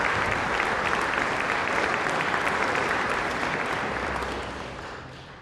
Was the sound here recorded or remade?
remade